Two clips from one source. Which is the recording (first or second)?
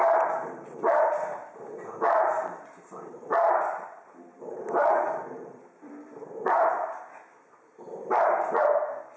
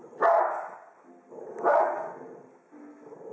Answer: second